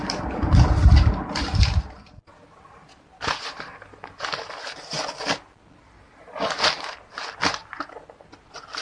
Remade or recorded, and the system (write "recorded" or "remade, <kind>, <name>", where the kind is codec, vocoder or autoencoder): recorded